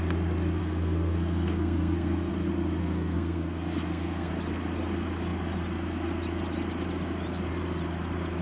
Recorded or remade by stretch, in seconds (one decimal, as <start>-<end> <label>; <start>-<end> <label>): 0.0-0.6 recorded; 0.6-2.3 remade; 2.3-2.8 recorded; 2.8-4.3 remade; 4.3-8.4 recorded